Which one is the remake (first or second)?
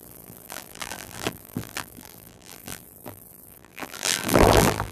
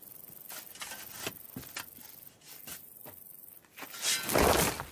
first